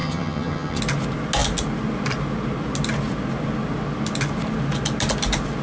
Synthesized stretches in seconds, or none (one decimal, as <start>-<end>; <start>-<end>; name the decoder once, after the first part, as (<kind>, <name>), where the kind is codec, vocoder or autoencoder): 0.0-0.8 (vocoder, HiFi-GAN)